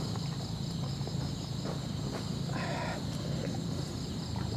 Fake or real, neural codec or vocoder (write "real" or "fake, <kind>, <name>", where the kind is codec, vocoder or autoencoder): real